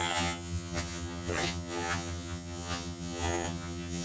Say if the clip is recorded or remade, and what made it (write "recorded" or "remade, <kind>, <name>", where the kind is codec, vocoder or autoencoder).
remade, vocoder, HiFi-GAN